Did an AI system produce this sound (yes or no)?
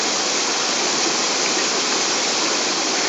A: no